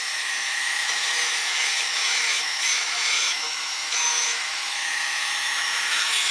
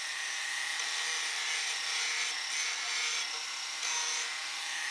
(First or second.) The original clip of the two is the second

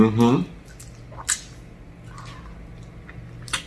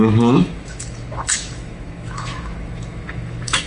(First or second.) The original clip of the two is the first